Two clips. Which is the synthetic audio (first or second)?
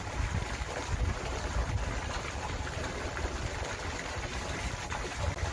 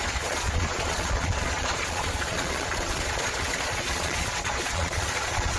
second